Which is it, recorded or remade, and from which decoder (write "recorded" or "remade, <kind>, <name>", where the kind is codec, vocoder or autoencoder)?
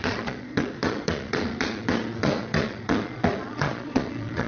remade, vocoder, Vocos